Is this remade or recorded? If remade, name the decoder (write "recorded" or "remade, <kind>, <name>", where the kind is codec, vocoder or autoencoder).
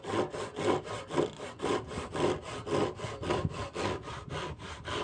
recorded